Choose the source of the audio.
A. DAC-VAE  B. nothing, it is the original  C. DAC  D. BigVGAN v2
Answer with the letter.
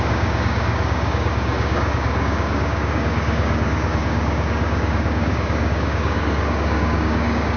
C